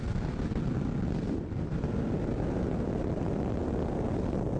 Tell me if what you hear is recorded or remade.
recorded